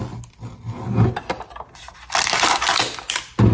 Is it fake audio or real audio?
real